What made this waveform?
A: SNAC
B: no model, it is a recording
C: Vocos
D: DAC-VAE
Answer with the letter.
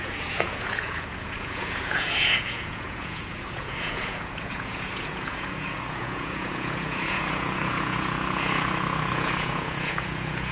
C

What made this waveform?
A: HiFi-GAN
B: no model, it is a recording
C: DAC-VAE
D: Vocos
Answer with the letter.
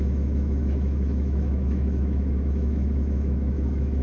C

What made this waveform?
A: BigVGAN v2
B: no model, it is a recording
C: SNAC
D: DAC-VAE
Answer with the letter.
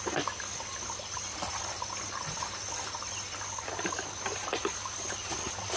B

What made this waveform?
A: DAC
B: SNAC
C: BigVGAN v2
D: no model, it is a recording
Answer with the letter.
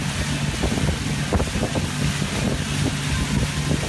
D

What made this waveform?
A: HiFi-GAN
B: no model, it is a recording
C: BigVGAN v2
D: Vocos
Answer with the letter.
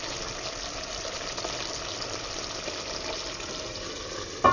B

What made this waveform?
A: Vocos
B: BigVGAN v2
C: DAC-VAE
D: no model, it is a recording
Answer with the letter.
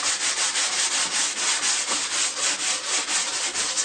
D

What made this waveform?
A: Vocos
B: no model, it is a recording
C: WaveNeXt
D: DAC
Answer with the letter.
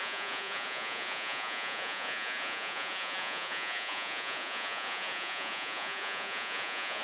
A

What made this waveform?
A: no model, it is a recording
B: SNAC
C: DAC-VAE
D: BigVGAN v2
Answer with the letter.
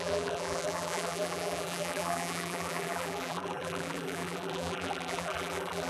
D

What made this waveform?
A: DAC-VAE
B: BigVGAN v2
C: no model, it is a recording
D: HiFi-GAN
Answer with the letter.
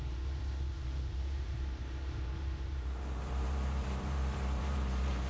B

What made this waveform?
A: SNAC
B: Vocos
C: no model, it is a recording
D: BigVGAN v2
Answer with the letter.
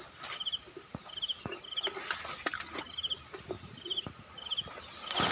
C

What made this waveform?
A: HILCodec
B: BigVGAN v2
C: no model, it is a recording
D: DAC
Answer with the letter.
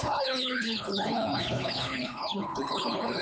A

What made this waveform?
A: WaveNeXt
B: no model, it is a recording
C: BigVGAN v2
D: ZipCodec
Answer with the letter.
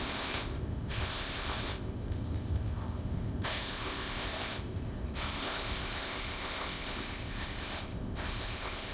D